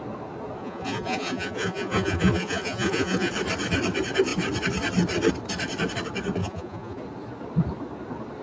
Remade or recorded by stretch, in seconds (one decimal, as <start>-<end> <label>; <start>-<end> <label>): 0.0-0.6 recorded; 0.6-3.3 remade; 3.3-6.4 recorded; 6.4-7.0 remade; 7.0-8.4 recorded